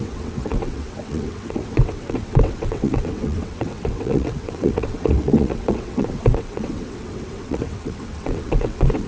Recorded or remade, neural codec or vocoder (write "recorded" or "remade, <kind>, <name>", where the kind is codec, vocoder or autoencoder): remade, vocoder, WaveNeXt